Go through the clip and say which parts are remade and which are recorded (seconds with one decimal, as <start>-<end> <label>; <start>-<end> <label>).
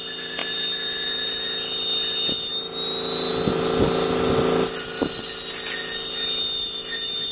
0.0-7.3 recorded